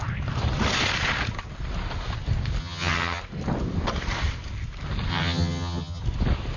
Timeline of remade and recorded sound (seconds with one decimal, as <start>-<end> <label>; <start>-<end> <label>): 0.0-2.6 recorded; 2.6-3.2 remade; 3.2-5.1 recorded; 5.1-6.0 remade; 6.0-6.6 recorded